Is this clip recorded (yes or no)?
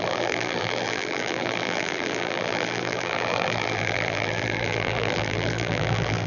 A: no